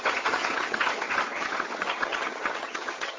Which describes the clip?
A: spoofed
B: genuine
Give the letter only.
A